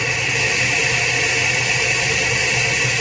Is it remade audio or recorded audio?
recorded